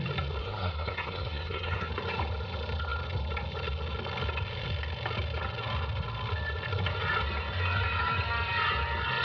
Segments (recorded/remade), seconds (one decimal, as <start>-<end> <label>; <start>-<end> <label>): 0.0-0.4 recorded; 0.4-1.9 remade; 1.9-9.2 recorded